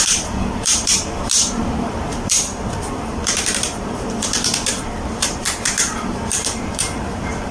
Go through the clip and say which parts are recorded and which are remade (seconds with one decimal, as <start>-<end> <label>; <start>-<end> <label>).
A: 0.0-7.5 remade